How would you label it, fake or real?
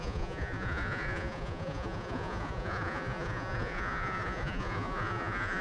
fake